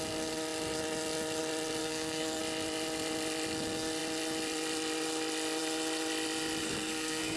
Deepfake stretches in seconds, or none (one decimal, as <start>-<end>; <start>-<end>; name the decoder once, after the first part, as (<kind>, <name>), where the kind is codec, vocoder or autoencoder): 1.8-2.4 (codec, SNAC); 6.6-7.4